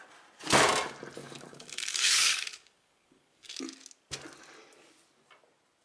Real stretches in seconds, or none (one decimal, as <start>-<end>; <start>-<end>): 0.0-1.2; 3.6-5.8